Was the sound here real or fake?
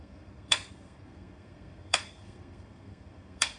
fake